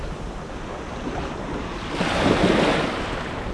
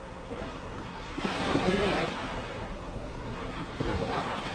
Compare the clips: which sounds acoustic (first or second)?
first